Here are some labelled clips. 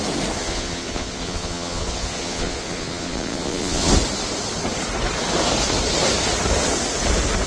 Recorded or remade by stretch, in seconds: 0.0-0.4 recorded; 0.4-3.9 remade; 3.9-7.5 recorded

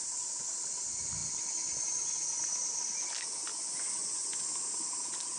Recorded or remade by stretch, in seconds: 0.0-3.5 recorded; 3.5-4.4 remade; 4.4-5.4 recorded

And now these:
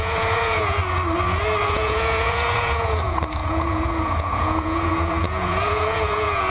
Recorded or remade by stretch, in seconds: 0.0-0.8 remade; 0.8-1.6 recorded; 1.6-6.5 remade